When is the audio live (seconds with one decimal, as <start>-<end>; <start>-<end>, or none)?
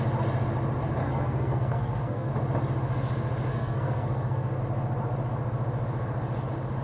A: 0.0-1.0; 2.3-3.5; 4.6-6.8